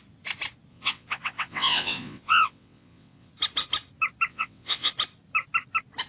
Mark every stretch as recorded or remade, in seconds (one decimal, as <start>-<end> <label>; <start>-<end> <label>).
0.0-0.7 recorded; 0.7-3.3 remade; 3.3-4.3 recorded; 4.3-4.9 remade; 4.9-6.1 recorded